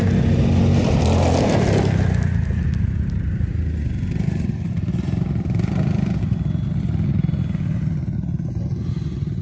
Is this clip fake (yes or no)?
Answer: no